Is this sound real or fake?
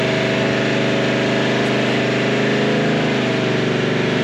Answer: real